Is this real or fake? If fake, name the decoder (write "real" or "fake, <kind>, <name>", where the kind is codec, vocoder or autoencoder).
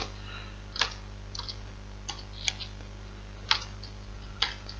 real